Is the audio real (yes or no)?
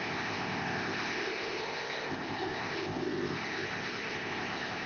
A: no